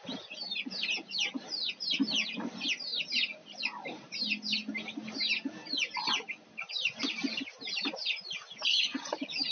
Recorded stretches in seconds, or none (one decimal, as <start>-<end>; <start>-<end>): 0.0-8.7